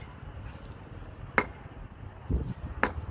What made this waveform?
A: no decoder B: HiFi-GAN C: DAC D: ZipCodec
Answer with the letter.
A